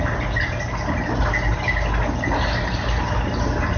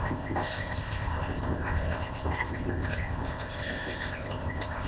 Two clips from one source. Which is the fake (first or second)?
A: second